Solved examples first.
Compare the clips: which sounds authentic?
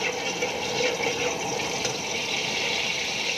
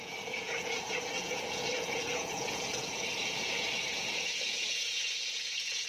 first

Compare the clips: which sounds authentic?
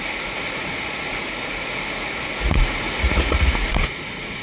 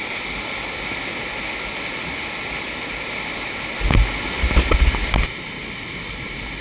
second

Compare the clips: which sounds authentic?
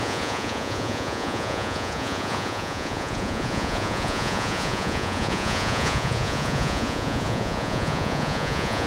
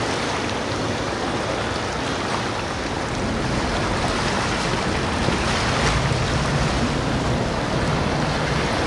second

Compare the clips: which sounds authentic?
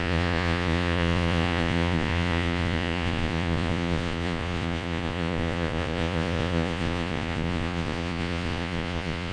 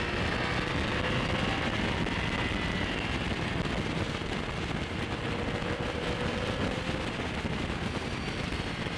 second